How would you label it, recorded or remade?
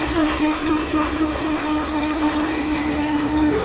remade